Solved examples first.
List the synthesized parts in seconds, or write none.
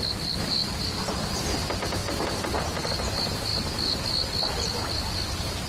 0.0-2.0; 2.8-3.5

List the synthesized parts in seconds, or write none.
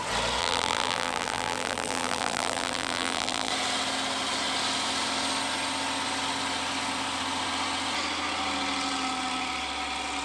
0.4-3.5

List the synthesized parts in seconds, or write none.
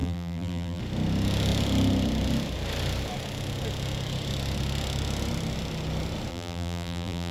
0.0-0.8; 6.3-7.3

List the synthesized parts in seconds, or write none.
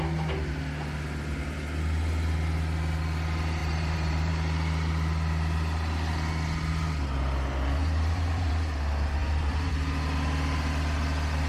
3.6-4.3; 7.8-8.5; 9.2-9.7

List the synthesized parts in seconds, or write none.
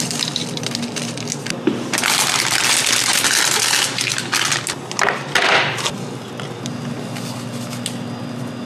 none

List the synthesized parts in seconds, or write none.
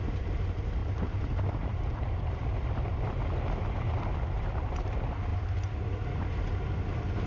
none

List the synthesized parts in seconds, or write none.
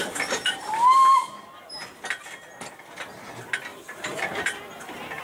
0.0-1.3; 3.7-5.2